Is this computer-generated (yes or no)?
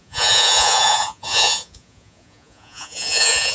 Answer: yes